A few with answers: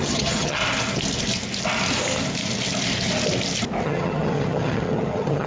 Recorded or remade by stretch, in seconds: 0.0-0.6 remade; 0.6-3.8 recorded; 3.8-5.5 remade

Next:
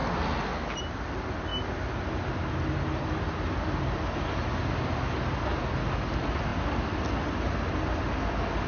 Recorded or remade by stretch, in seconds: 0.0-8.7 recorded

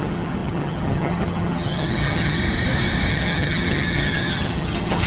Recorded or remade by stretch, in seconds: 0.0-2.4 remade; 2.4-3.1 recorded; 3.1-5.1 remade

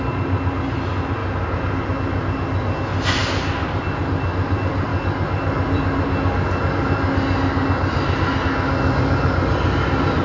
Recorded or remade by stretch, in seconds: 0.0-10.2 recorded

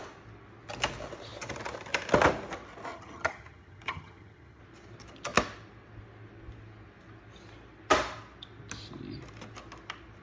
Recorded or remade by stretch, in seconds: 0.0-2.9 recorded; 2.9-4.6 remade; 4.6-10.2 recorded

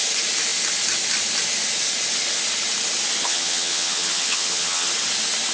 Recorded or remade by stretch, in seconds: 0.0-3.2 recorded; 3.2-4.9 remade; 4.9-5.5 recorded

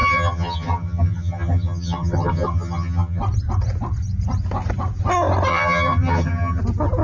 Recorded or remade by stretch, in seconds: 0.0-3.2 remade; 3.2-5.5 recorded; 5.5-6.6 remade; 6.6-7.0 recorded

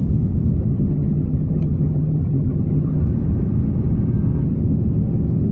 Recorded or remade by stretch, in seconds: 0.0-0.7 recorded; 0.7-3.0 remade; 3.0-5.5 recorded